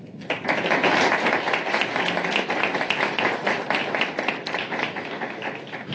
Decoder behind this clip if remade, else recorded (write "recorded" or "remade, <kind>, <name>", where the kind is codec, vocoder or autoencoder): recorded